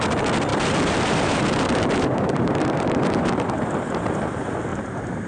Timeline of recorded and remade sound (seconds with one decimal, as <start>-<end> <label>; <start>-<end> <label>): 0.0-0.5 recorded; 0.5-3.7 remade; 3.7-4.7 recorded; 4.7-5.3 remade